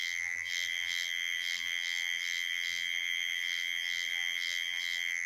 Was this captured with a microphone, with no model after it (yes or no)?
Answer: no